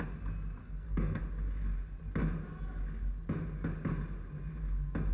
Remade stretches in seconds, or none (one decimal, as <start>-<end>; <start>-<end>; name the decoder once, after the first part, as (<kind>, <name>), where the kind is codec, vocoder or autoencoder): 0.6-1.2 (codec, SNAC)